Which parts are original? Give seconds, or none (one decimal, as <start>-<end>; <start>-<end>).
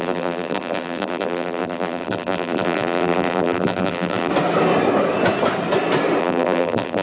4.3-6.2